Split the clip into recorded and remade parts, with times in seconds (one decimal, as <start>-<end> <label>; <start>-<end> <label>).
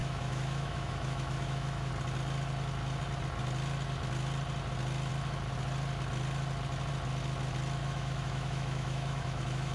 0.0-1.9 remade; 1.9-7.8 recorded; 7.8-9.7 remade